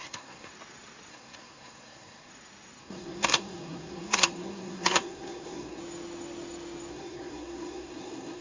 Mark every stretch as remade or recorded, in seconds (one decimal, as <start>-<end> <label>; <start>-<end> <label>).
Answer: 0.0-0.5 remade; 0.5-1.1 recorded; 1.1-2.3 remade; 2.3-2.8 recorded; 2.8-5.8 remade; 5.8-6.9 recorded; 6.9-8.4 remade